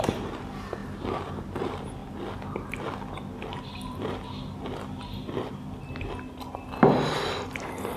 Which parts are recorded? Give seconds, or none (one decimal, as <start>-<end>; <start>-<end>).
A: 0.0-8.0